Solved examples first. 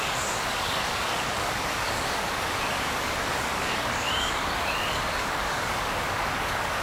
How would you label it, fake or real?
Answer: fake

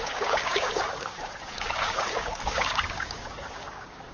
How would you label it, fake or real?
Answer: fake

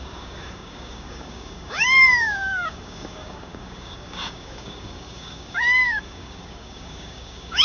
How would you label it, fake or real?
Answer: fake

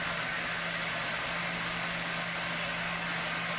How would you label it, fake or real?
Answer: real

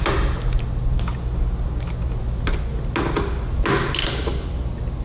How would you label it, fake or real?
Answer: real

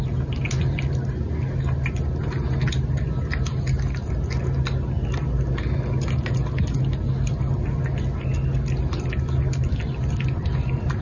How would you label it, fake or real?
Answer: real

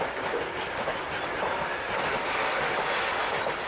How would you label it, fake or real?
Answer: real